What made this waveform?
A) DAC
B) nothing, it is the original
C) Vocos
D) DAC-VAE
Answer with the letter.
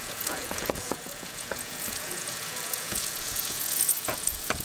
C